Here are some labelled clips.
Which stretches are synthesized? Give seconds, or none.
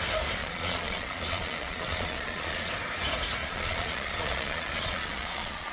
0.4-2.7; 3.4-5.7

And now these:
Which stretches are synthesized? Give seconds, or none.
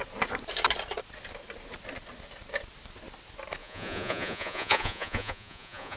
3.6-6.0